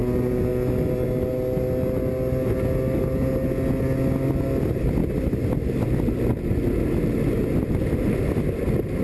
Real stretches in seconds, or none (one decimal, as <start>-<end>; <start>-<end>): 0.0-9.0